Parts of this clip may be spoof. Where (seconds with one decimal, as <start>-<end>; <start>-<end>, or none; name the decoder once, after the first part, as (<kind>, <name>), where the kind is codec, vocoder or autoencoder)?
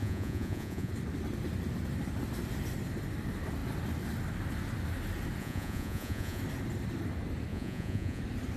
0.0-0.9 (vocoder, Vocos); 5.4-6.4; 7.5-8.2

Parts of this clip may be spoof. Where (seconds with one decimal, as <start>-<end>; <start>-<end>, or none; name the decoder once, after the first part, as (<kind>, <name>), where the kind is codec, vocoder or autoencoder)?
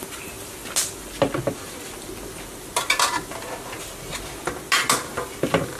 none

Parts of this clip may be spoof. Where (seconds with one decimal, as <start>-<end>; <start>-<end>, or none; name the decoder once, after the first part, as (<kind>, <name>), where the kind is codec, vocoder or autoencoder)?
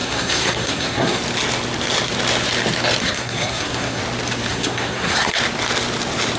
0.0-1.2 (codec, SNAC); 3.0-4.0; 4.5-5.4